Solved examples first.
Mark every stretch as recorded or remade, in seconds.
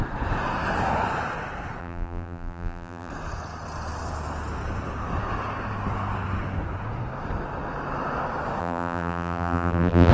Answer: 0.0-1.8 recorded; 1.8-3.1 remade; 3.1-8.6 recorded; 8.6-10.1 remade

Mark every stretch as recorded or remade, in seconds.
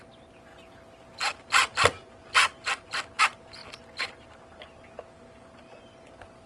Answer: 0.0-3.6 recorded; 3.6-5.8 remade; 5.8-6.5 recorded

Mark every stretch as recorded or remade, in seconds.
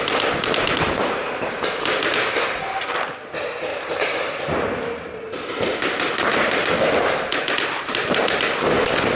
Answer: 0.0-3.7 recorded; 3.7-4.4 remade; 4.4-9.2 recorded